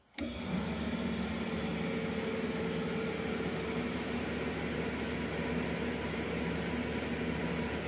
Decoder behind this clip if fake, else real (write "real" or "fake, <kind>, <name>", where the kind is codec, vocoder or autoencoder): real